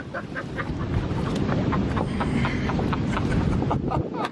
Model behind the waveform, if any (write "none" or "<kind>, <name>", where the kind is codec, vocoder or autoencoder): none